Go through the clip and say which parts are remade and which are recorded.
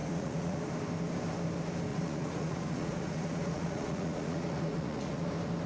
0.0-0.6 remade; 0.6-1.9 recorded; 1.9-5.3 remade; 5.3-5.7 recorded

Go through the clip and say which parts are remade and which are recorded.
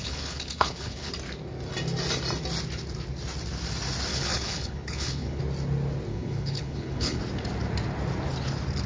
0.0-1.1 remade; 1.1-4.1 recorded; 4.1-5.4 remade; 5.4-6.1 recorded; 6.1-7.2 remade; 7.2-8.9 recorded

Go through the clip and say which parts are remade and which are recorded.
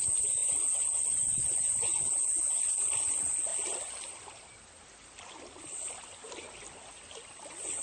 0.0-0.4 recorded; 0.4-2.5 remade; 2.5-7.8 recorded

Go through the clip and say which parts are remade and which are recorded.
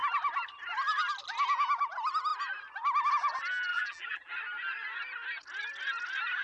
0.0-3.7 recorded; 3.7-4.3 remade; 4.3-6.4 recorded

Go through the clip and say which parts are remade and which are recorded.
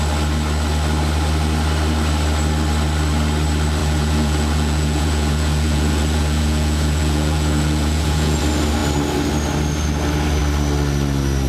0.0-3.8 recorded; 3.8-8.4 remade; 8.4-11.5 recorded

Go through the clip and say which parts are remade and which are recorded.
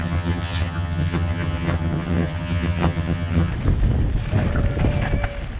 0.0-3.5 remade; 3.5-5.6 recorded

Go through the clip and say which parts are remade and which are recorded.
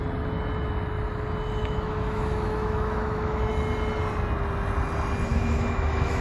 0.0-1.6 recorded; 1.6-3.5 remade; 3.5-5.3 recorded; 5.3-6.2 remade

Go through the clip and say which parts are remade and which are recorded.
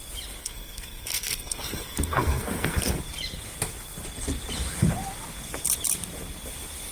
0.0-0.4 recorded; 0.4-3.0 remade; 3.0-6.9 recorded